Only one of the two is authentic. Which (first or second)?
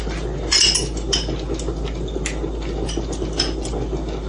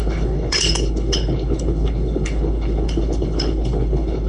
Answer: first